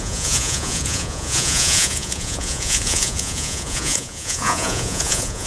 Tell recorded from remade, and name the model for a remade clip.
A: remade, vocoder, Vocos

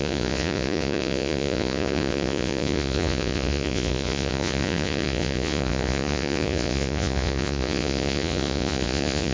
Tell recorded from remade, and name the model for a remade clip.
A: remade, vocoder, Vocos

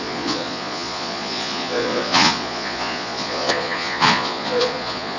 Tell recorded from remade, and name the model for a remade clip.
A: remade, vocoder, Vocos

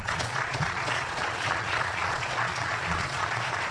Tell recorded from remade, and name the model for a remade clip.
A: remade, vocoder, Vocos